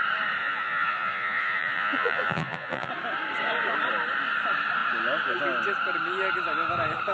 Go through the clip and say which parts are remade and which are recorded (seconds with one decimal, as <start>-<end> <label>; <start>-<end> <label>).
0.0-0.4 recorded; 0.4-2.9 remade; 2.9-7.1 recorded